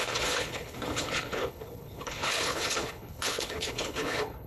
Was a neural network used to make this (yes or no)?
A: yes